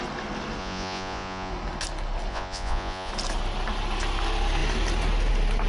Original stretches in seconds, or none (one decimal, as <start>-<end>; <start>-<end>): 0.0-0.6; 1.5-2.3; 3.1-5.7